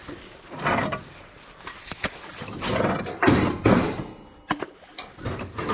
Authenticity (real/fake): real